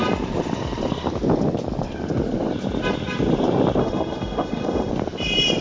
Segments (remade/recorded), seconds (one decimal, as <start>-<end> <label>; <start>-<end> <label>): 0.0-3.8 recorded; 3.8-4.9 remade; 4.9-5.6 recorded